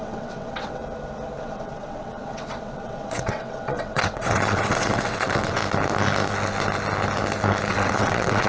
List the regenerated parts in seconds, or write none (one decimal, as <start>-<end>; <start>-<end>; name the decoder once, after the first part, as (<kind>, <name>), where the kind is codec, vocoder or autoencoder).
0.0-0.8 (vocoder, WaveNeXt); 1.4-5.6; 7.7-8.5

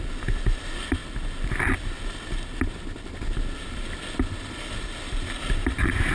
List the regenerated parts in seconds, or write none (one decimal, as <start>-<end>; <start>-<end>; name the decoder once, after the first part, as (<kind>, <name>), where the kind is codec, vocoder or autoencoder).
none

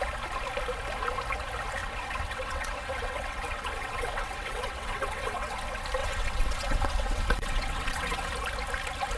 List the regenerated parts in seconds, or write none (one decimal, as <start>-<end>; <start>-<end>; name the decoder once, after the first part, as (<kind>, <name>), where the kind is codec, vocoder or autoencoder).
1.8-5.6 (vocoder, WaveNeXt); 6.0-8.3

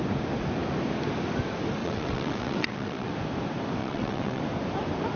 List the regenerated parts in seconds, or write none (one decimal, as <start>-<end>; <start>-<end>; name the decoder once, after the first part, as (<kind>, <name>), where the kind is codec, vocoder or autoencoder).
1.8-3.1 (vocoder, WaveNeXt); 3.8-4.4

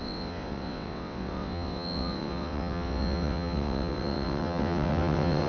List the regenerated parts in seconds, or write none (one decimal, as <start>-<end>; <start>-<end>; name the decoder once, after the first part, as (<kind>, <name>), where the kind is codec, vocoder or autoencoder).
0.0-5.5 (vocoder, WaveNeXt)

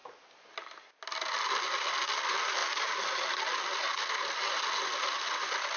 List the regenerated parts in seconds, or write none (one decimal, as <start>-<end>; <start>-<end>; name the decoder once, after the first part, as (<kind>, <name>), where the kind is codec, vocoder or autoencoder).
none

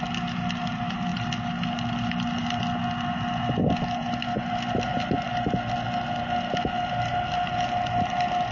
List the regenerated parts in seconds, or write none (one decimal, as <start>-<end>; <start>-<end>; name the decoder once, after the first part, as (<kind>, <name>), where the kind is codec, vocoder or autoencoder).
none